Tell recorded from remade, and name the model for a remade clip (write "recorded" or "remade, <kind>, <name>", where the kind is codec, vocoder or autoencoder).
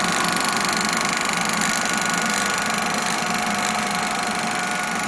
recorded